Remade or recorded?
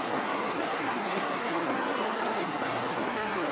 remade